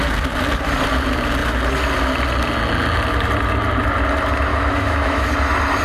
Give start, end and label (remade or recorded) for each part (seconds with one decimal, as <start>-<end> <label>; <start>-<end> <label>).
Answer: 0.0-4.5 recorded; 4.5-5.3 remade; 5.3-5.8 recorded